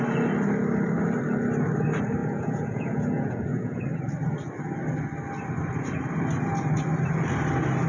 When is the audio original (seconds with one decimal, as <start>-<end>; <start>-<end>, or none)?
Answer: 0.0-2.2; 3.8-7.9

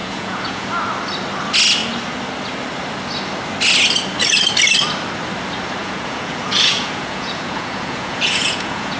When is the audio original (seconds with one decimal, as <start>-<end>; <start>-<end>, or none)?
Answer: 0.7-5.8

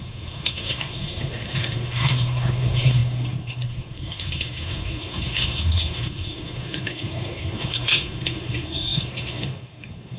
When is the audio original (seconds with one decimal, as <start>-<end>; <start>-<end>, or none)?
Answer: none

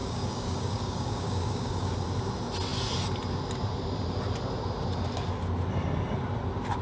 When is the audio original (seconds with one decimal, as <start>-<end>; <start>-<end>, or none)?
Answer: 1.9-6.8

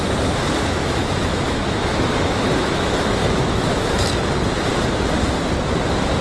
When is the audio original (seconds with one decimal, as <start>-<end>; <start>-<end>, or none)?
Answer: 0.0-0.8; 4.2-6.2

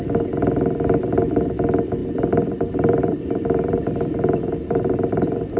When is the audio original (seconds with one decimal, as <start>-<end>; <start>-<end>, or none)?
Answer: 0.0-2.0